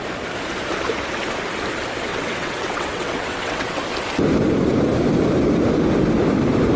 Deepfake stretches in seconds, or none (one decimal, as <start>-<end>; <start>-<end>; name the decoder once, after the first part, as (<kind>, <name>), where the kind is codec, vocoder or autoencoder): 2.1-3.8 (vocoder, WaveNeXt)